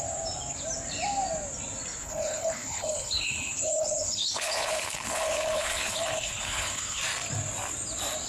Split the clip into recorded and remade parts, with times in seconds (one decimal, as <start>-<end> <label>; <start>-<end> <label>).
0.0-2.0 recorded; 2.0-7.0 remade; 7.0-8.3 recorded